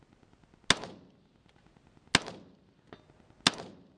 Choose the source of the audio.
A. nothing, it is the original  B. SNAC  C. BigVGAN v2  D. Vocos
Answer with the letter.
A